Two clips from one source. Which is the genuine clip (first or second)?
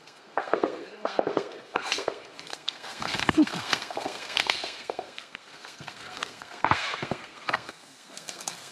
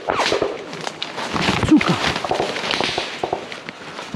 second